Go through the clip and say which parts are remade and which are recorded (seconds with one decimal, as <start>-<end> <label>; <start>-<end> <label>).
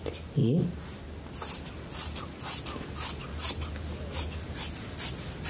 0.0-5.5 recorded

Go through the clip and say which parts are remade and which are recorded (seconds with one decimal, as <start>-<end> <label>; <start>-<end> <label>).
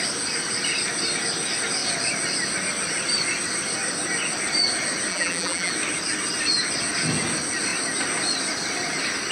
0.0-5.1 recorded; 5.1-5.7 remade; 5.7-9.3 recorded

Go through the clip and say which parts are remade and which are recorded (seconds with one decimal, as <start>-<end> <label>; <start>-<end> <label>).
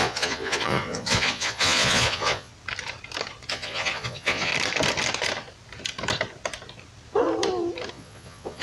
0.0-2.5 remade; 2.5-3.5 recorded; 3.5-4.5 remade; 4.5-7.9 recorded; 7.9-8.6 remade